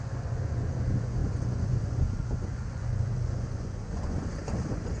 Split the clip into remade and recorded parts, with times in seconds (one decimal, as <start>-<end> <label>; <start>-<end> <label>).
0.0-5.0 remade

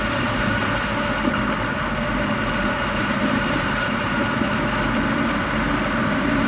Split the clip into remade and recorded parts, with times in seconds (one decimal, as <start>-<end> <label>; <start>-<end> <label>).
0.0-0.6 remade; 0.6-2.5 recorded; 2.5-4.2 remade; 4.2-6.0 recorded; 6.0-6.5 remade

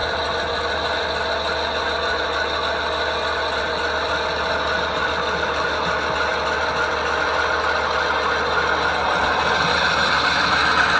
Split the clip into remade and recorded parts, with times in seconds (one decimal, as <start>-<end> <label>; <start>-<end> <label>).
0.0-11.0 recorded

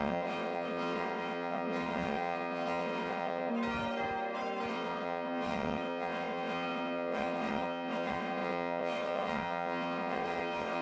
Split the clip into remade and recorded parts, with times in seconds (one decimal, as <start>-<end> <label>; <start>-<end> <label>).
0.0-3.5 remade; 3.5-4.7 recorded; 4.7-10.8 remade